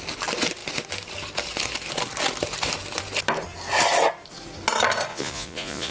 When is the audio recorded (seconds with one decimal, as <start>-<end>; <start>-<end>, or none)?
0.0-5.1

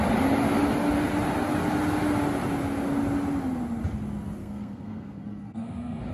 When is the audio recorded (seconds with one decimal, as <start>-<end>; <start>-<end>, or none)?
0.0-4.4